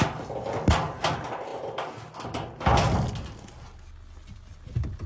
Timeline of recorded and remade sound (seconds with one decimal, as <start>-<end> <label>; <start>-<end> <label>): 0.0-5.1 recorded